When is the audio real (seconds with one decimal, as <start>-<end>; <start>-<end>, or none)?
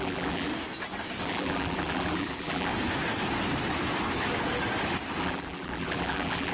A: 0.5-1.2; 2.7-5.2